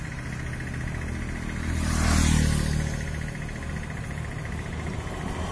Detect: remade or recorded recorded